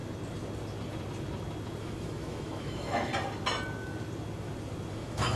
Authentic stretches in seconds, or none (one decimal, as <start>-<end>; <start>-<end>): 0.0-1.8; 3.1-4.9